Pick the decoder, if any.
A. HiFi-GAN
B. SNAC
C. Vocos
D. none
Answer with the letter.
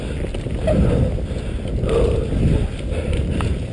D